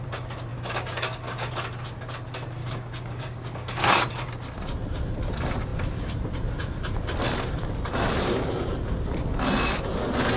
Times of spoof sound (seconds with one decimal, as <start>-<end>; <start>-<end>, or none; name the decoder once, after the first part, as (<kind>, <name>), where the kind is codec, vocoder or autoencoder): 0.5-1.5 (codec, DAC); 2.6-4.1